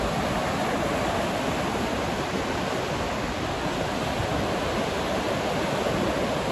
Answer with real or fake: real